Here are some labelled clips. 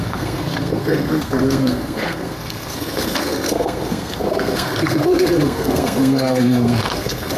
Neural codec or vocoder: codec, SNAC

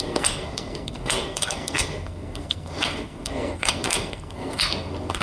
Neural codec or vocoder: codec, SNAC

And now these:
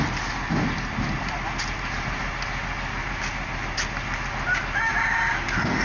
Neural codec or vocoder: none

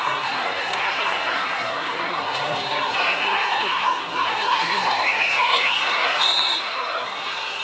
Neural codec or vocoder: codec, SNAC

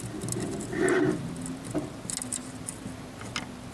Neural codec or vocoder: none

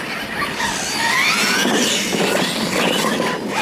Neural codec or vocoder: none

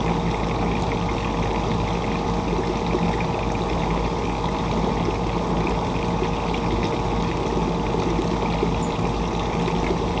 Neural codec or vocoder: none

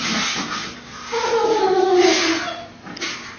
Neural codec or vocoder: none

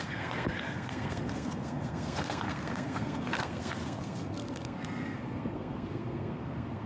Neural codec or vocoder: codec, SNAC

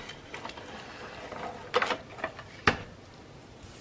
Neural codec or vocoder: none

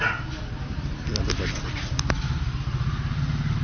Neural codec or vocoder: none